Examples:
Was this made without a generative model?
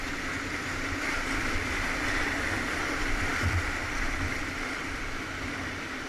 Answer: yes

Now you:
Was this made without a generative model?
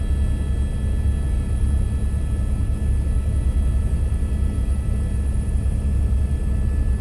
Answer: yes